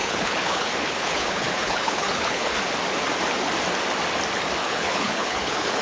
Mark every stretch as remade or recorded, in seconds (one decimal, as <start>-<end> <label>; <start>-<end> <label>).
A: 0.0-2.6 remade; 2.6-4.6 recorded; 4.6-5.8 remade